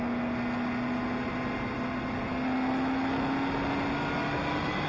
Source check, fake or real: real